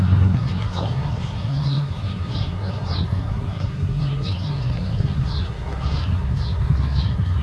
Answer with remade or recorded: remade